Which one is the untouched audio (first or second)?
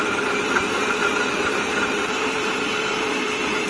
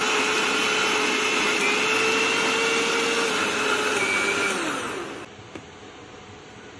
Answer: second